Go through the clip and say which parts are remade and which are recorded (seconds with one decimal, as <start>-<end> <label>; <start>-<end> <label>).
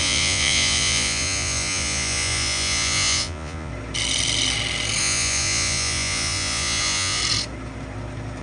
0.0-3.7 remade; 3.7-5.0 recorded; 5.0-7.2 remade; 7.2-8.4 recorded